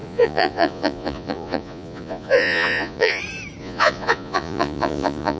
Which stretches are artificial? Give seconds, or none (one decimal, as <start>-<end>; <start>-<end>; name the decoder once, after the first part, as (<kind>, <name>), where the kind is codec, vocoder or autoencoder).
0.0-3.2 (vocoder, Vocos); 3.6-5.4